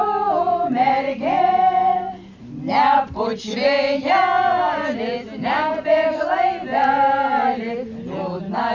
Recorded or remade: recorded